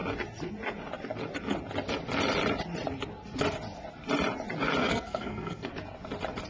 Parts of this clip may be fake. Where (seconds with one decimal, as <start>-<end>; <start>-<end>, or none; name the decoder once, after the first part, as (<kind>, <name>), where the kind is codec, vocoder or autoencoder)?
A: 4.8-5.7 (codec, SNAC)